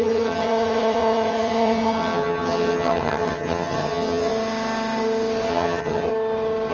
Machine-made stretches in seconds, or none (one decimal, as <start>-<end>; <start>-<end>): 0.0-4.3; 5.5-6.1